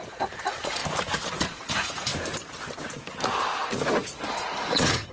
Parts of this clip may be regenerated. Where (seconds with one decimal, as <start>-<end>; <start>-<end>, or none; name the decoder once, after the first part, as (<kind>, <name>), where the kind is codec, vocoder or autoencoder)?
0.0-0.8 (vocoder, Vocos); 1.3-2.1; 4.3-5.1

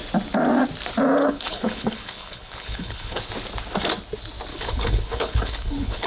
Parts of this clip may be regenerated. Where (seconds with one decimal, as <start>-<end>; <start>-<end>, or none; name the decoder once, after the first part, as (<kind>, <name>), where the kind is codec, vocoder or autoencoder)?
1.2-3.3 (codec, HILCodec); 4.5-6.1